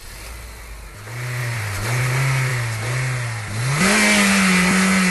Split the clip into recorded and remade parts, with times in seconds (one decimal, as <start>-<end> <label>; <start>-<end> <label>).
0.0-1.4 recorded; 1.4-2.0 remade; 2.0-5.1 recorded